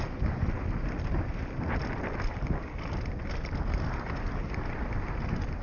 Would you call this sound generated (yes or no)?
no